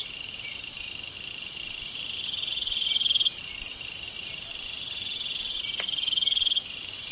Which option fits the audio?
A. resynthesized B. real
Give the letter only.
A